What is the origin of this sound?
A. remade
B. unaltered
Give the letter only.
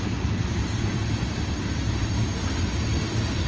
B